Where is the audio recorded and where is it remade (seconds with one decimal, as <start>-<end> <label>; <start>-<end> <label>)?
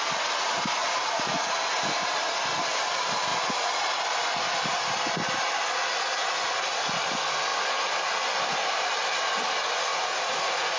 0.0-0.8 recorded; 0.8-1.6 remade; 1.6-9.9 recorded; 9.9-10.8 remade